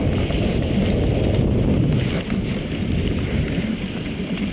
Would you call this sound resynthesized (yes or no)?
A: no